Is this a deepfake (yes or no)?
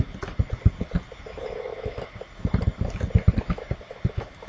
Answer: no